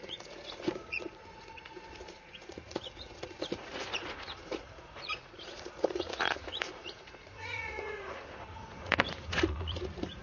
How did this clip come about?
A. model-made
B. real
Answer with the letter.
A